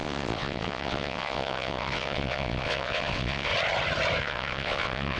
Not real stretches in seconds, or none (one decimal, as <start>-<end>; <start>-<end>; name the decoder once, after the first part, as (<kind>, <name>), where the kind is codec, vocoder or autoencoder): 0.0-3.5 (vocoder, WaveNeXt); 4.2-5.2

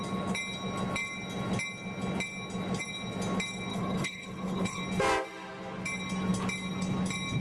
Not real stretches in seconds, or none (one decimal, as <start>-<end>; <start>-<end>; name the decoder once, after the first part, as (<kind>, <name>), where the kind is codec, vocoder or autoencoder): 3.7-4.8 (codec, HILCodec)

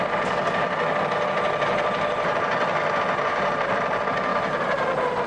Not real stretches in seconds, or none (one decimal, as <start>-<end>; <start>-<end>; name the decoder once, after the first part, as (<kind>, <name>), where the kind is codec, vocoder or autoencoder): 3.3-3.9 (vocoder, BigVGAN v2)

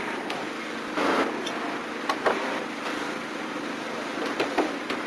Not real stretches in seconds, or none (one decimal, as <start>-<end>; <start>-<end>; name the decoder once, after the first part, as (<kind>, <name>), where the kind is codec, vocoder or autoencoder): none